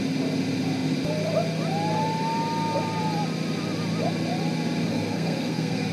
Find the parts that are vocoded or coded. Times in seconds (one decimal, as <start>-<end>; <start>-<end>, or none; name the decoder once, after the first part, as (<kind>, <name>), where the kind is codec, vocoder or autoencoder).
4.9-5.9 (codec, SNAC)